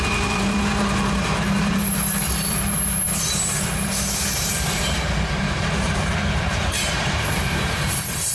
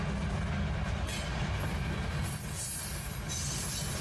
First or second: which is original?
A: second